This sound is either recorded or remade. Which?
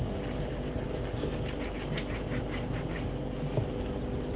recorded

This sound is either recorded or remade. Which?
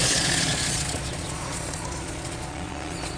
remade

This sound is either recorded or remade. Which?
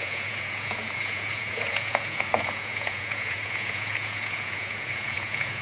remade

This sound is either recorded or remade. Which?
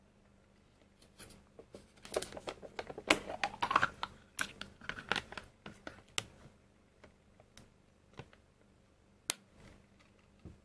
recorded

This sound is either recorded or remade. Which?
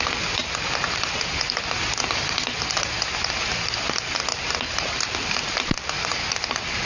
recorded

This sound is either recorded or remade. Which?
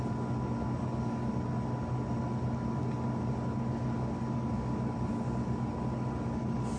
recorded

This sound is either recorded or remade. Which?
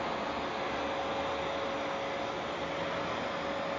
recorded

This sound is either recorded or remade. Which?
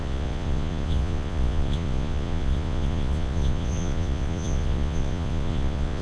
remade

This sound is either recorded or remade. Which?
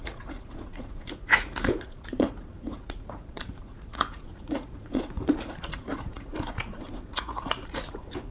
remade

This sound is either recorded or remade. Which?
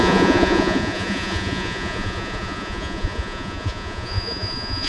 remade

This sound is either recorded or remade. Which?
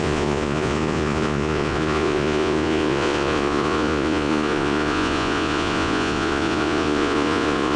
remade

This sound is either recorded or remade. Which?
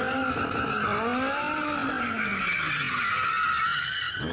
recorded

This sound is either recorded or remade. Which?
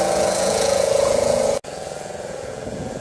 remade